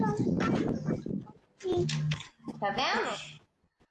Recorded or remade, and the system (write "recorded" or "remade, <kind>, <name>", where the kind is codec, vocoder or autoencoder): recorded